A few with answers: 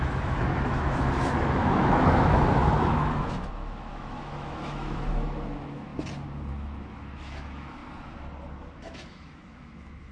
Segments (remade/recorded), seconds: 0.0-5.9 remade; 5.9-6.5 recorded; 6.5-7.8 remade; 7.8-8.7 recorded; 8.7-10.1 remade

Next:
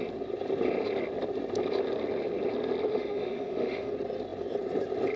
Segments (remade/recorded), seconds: 0.0-2.9 recorded; 2.9-3.9 remade; 3.9-5.2 recorded

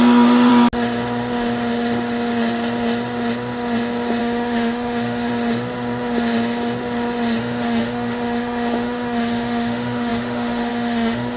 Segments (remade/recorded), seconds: 0.0-0.5 remade; 0.5-4.2 recorded; 4.2-5.3 remade; 5.3-7.4 recorded; 7.4-11.4 remade

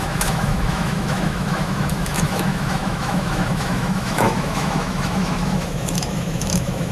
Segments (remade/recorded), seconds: 0.0-6.9 remade

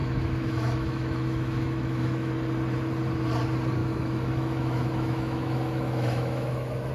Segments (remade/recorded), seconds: 0.0-2.3 remade; 2.3-3.8 recorded; 3.8-6.9 remade

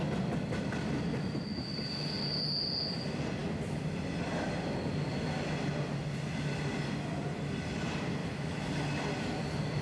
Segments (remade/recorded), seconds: 0.0-8.2 recorded; 8.2-8.7 remade; 8.7-9.8 recorded

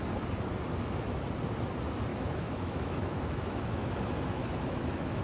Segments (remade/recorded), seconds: 0.0-2.1 recorded; 2.1-5.2 remade